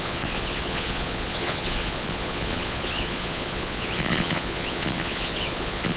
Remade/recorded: remade